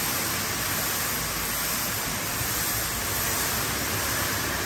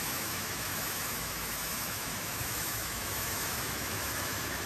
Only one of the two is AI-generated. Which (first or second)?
second